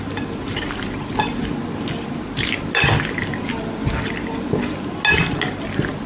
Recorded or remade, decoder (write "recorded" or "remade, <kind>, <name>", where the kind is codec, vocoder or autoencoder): recorded